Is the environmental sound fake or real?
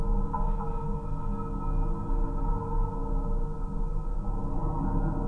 real